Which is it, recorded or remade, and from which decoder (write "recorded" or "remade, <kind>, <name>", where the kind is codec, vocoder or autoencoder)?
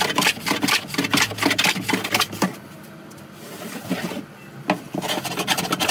recorded